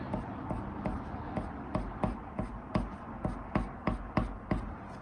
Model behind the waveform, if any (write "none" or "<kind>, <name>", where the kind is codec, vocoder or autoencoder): none